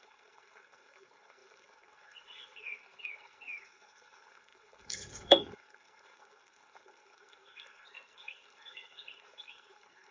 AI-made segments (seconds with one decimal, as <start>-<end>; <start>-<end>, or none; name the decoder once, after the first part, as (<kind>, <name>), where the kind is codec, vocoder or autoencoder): 0.0-10.1 (codec, SNAC)

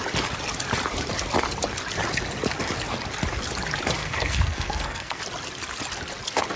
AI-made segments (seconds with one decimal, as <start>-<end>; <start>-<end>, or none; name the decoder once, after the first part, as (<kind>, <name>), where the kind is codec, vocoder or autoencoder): 4.0-5.2 (codec, SNAC)

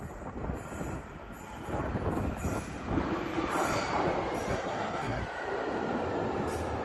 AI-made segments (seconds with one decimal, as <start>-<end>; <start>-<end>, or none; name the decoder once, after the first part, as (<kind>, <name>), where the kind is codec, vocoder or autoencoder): 4.5-5.2 (codec, SNAC)

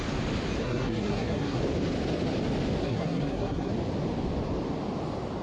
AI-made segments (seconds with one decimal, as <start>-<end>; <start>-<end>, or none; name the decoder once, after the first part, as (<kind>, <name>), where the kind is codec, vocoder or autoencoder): 0.6-1.6 (codec, SNAC); 2.8-3.7